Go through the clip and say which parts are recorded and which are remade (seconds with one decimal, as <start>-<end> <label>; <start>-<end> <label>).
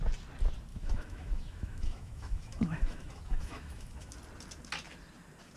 0.0-0.7 recorded; 0.7-4.1 remade; 4.1-5.6 recorded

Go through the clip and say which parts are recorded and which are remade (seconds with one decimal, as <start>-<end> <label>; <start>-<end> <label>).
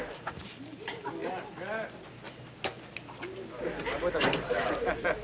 0.0-1.2 remade; 1.2-4.1 recorded; 4.1-5.2 remade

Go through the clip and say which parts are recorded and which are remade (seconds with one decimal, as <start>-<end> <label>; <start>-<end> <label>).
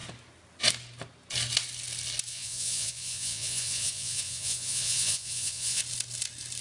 0.0-2.3 recorded; 2.3-5.8 remade; 5.8-6.6 recorded